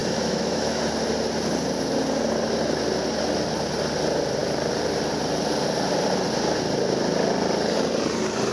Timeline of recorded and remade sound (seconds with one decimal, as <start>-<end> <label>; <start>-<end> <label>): 0.0-0.8 remade; 0.8-8.5 recorded